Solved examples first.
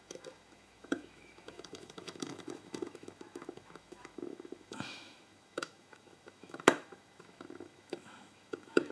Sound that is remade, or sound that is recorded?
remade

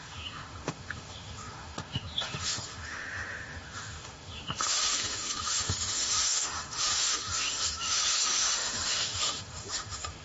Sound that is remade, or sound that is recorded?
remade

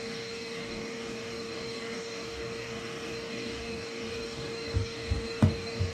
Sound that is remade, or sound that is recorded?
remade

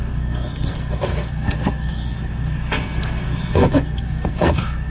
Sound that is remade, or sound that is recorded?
remade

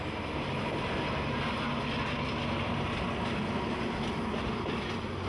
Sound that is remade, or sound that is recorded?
recorded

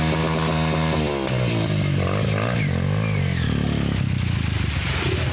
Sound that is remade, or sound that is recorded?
recorded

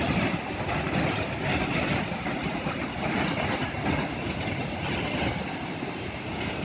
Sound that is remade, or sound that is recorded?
remade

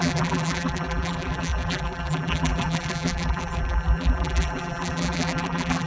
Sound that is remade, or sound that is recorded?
remade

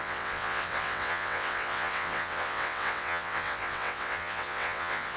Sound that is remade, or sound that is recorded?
remade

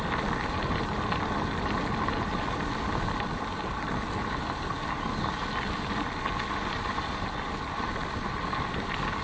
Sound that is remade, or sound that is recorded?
recorded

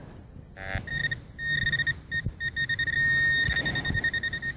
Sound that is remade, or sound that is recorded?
recorded